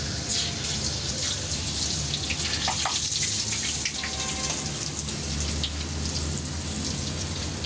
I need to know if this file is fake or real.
real